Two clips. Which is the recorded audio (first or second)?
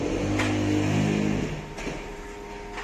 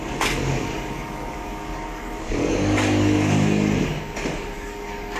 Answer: first